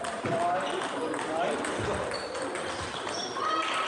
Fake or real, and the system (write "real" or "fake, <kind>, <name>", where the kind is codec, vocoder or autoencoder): real